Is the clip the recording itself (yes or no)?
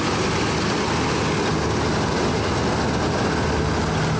yes